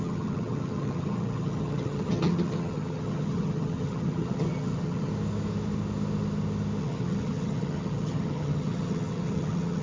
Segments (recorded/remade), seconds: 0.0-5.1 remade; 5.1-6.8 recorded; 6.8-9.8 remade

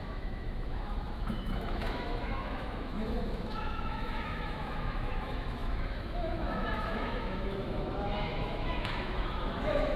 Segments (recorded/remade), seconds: 0.0-10.0 remade

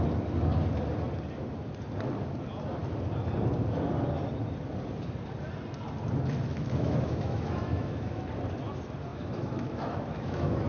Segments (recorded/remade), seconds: 0.0-6.5 recorded; 6.5-8.2 remade; 8.2-9.1 recorded; 9.1-10.7 remade

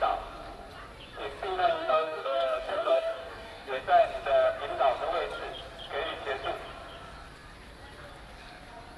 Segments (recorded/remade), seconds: 0.0-1.7 recorded; 1.7-3.8 remade; 3.8-9.0 recorded

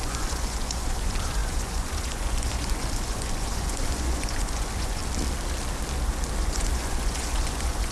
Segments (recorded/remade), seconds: 0.0-5.0 remade; 5.0-6.4 recorded; 6.4-7.9 remade